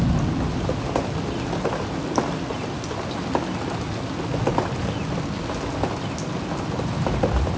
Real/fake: real